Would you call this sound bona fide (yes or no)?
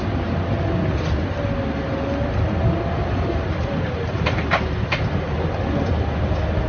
yes